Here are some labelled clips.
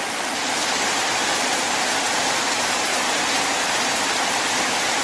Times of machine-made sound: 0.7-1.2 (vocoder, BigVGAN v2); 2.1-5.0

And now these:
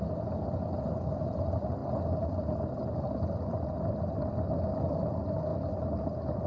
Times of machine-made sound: 0.0-6.5 (vocoder, BigVGAN v2)

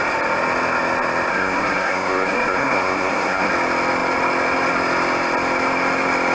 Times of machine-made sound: 1.3-3.5 (codec, SNAC)

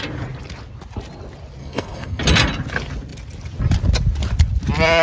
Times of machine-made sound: 1.6-2.2 (codec, SNAC)

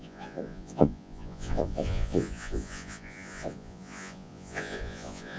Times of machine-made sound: 0.0-5.4 (vocoder, Vocos)

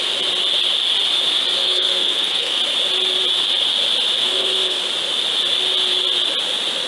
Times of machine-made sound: 1.6-2.6 (codec, SNAC); 4.2-4.8